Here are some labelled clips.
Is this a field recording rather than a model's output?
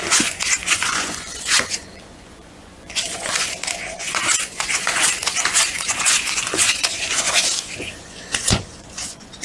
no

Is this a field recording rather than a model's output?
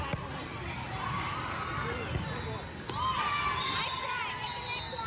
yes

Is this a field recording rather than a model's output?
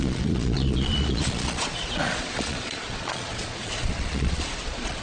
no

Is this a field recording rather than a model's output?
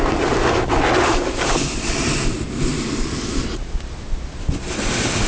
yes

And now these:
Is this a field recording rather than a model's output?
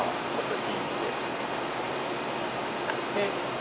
yes